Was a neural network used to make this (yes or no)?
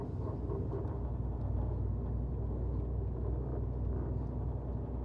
no